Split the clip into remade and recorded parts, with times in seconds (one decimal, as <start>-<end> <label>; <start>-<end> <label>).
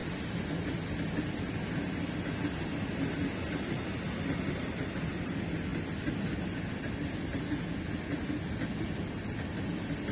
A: 0.0-10.1 recorded